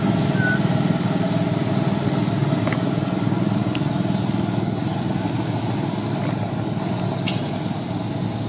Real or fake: real